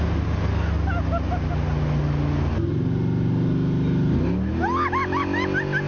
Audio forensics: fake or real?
real